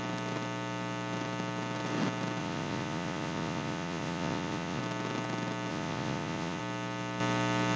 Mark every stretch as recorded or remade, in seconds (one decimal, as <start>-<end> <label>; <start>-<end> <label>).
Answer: 0.0-2.4 recorded; 2.4-4.8 remade; 4.8-5.7 recorded; 5.7-6.6 remade; 6.6-7.8 recorded